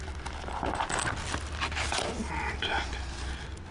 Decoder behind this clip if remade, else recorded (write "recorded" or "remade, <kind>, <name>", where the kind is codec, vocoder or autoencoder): recorded